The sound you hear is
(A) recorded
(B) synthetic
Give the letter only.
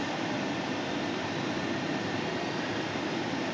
B